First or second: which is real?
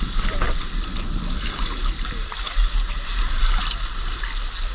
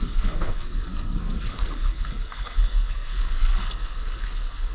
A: first